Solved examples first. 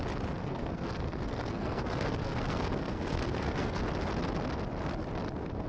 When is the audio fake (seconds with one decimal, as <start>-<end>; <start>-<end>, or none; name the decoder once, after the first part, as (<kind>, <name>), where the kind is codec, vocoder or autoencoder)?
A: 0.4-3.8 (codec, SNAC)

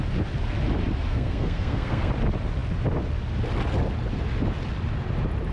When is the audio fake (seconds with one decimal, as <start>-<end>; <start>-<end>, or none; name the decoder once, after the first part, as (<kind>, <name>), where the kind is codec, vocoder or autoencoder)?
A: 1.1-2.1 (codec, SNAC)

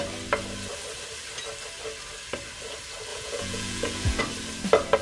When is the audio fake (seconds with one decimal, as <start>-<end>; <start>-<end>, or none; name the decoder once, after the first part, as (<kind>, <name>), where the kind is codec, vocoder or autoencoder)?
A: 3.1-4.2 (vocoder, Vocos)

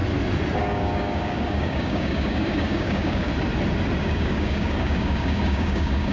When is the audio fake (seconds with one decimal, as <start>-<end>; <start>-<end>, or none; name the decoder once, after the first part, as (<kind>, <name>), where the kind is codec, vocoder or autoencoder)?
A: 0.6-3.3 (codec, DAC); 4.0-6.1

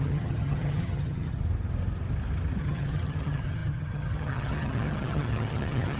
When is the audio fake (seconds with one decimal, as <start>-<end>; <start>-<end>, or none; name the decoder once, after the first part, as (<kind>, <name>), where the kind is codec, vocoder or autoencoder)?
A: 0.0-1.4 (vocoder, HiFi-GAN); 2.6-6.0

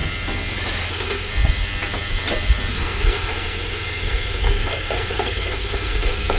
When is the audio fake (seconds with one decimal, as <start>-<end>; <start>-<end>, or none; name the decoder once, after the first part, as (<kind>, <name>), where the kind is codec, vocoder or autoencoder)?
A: 0.9-1.3 (codec, SNAC); 2.7-6.4

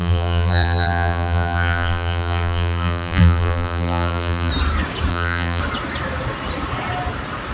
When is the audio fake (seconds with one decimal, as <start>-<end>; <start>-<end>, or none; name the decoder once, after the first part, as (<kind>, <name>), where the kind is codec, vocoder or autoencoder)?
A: 0.0-4.5 (vocoder, BigVGAN v2); 5.1-5.6

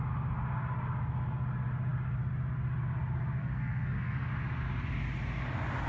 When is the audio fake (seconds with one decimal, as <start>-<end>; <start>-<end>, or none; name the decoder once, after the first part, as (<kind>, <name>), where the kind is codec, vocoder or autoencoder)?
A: 3.4-4.3 (codec, SNAC)